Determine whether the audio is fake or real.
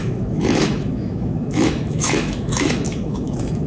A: fake